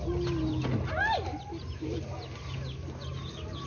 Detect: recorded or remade recorded